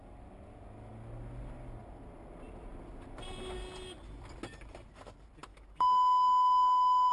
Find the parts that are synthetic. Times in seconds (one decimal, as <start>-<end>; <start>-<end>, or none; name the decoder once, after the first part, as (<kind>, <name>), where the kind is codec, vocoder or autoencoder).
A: 5.5-7.1 (autoencoder, DAC-VAE)